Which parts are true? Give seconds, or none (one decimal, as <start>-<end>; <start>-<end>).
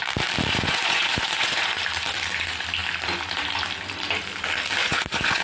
0.0-0.5; 1.8-4.8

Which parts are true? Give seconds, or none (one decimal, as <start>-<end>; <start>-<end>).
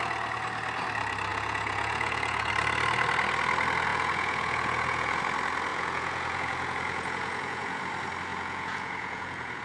0.0-1.3; 2.5-3.9; 5.2-5.7; 7.8-8.3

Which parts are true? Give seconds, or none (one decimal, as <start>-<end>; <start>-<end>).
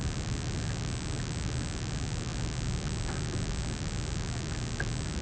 0.0-5.2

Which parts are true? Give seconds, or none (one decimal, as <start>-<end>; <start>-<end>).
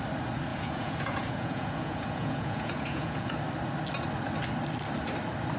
0.0-0.5; 3.3-5.6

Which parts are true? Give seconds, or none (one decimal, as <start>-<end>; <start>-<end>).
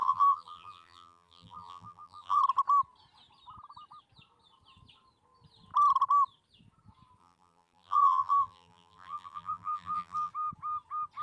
2.4-7.2; 10.3-11.2